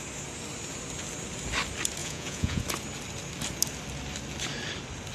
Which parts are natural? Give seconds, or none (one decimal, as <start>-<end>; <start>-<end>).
0.0-2.0; 2.6-5.1